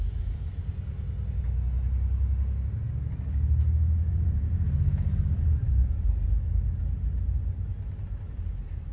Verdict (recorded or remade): recorded